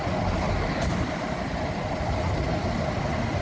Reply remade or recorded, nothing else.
recorded